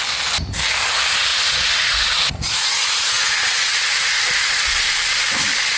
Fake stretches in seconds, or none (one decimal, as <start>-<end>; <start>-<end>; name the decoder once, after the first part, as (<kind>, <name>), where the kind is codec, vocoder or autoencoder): 1.3-4.2 (vocoder, Vocos)

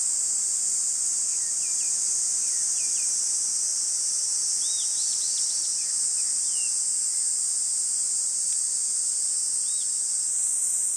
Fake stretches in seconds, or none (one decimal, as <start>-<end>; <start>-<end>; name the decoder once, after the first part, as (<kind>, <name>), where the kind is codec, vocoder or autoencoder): none